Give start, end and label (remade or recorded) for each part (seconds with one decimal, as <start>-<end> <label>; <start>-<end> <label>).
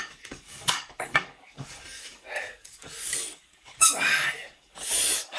0.0-5.4 remade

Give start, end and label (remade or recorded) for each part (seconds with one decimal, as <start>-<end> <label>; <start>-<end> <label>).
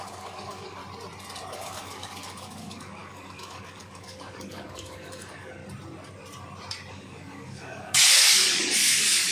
0.0-0.8 remade; 0.8-1.5 recorded; 1.5-5.6 remade; 5.6-6.9 recorded; 6.9-9.3 remade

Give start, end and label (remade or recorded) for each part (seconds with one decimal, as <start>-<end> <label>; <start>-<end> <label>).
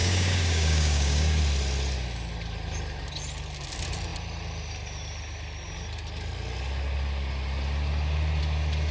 0.0-1.4 remade; 1.4-8.9 recorded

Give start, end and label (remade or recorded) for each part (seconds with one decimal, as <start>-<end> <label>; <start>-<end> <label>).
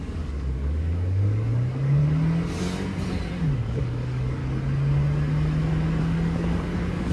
0.0-2.0 remade; 2.0-3.4 recorded; 3.4-4.4 remade; 4.4-6.0 recorded; 6.0-7.1 remade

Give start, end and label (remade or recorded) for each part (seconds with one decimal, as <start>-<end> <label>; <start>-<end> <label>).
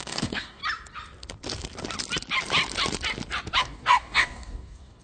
0.0-0.6 remade; 0.6-3.6 recorded; 3.6-5.0 remade